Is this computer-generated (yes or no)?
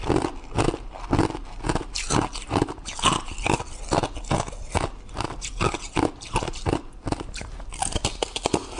no